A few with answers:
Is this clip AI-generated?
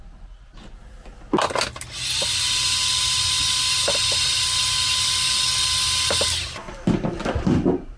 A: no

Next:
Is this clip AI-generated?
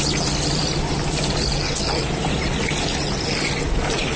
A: no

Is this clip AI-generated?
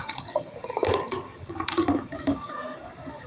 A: yes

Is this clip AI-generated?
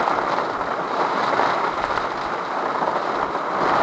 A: no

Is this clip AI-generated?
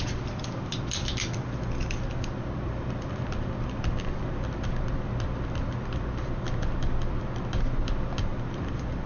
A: yes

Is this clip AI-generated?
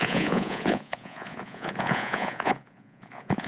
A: yes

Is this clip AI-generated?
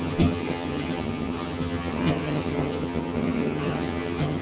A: yes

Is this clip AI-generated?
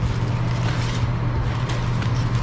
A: no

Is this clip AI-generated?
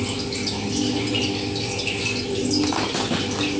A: no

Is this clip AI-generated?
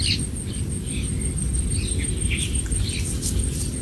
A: no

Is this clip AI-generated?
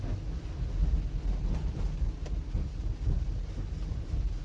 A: no